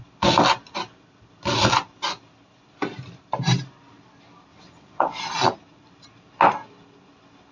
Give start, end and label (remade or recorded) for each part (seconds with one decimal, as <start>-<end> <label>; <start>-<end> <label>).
0.0-4.5 recorded; 4.5-5.2 remade; 5.2-7.5 recorded